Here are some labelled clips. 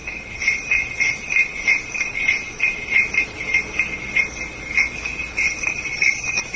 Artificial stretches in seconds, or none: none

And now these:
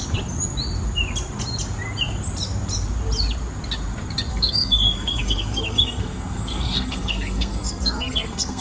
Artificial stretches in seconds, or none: 4.3-8.6

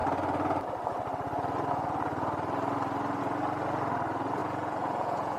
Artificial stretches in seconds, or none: 4.4-5.4

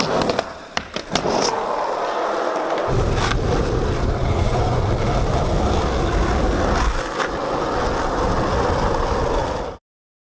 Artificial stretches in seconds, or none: 4.2-4.8

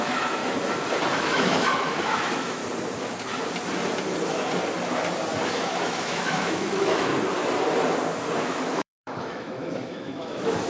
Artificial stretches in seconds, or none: 0.0-0.4; 1.2-2.6; 5.5-7.1; 8.4-10.7

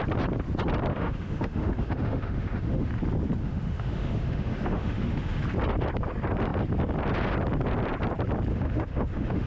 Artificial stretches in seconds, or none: 0.9-2.9; 3.4-5.4; 8.5-9.5

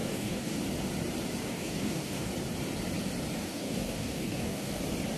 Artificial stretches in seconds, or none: 0.0-0.6; 1.4-2.3; 3.4-4.8